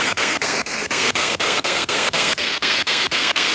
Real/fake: fake